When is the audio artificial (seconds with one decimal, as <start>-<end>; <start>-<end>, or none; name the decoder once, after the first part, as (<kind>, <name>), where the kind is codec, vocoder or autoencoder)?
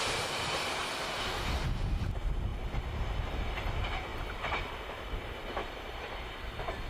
5.6-6.4 (vocoder, BigVGAN v2)